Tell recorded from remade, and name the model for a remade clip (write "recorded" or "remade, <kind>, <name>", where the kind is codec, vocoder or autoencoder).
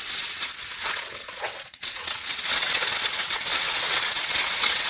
remade, vocoder, WaveNeXt